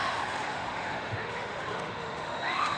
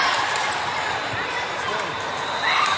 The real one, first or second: second